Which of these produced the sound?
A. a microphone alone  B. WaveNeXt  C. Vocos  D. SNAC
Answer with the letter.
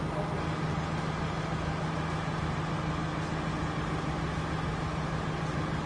A